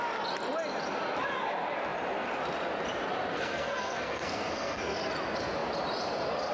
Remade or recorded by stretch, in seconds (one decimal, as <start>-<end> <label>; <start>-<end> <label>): 0.0-3.3 recorded; 3.3-5.1 remade; 5.1-6.5 recorded